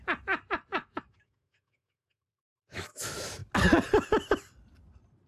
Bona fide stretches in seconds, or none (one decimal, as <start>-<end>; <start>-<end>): 0.0-0.7; 3.0-5.3

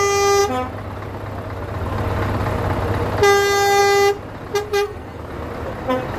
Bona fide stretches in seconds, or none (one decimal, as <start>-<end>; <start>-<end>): 0.0-4.7; 5.2-6.2

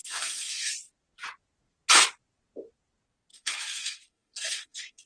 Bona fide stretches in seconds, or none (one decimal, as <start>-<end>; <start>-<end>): 0.7-3.3

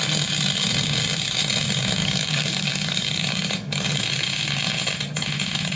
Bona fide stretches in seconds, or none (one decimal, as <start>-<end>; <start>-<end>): 0.0-2.0; 4.0-5.8

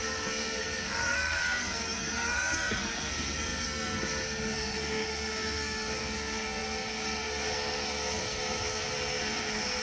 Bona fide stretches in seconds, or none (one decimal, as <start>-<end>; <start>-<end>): none

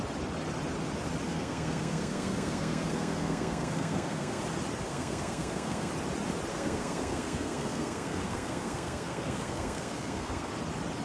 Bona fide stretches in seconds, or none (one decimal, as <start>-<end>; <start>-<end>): 0.0-1.3; 4.4-4.9; 5.9-6.5; 10.5-11.0

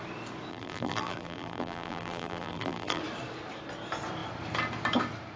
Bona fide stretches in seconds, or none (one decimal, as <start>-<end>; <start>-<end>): 0.0-0.5; 3.0-5.4